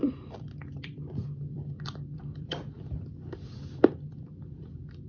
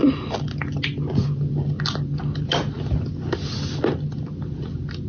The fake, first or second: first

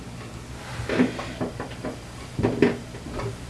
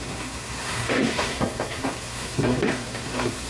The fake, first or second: second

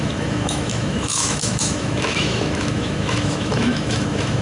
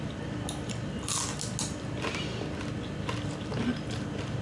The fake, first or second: first